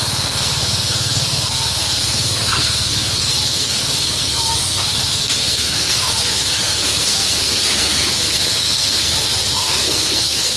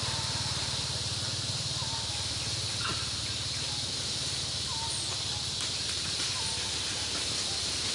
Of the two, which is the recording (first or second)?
second